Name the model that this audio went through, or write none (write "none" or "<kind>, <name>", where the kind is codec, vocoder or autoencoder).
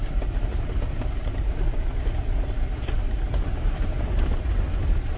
vocoder, BigVGAN v2